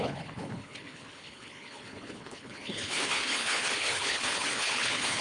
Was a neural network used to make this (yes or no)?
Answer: yes